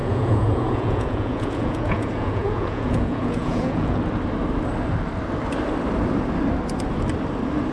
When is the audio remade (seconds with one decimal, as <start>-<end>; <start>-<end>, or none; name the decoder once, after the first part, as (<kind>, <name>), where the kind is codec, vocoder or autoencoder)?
0.0-4.0 (vocoder, Vocos)